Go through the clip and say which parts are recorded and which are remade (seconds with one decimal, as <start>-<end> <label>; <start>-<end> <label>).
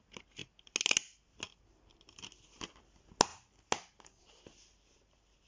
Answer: 0.0-5.5 recorded